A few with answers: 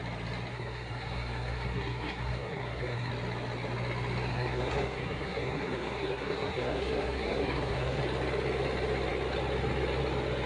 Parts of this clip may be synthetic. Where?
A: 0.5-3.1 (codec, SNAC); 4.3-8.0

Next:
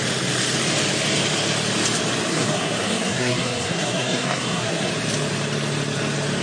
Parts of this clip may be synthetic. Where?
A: 2.3-4.9 (codec, SNAC)